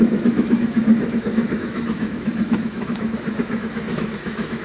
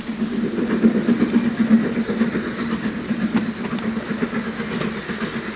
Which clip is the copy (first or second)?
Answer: first